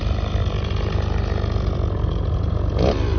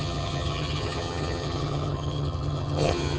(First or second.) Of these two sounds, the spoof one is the second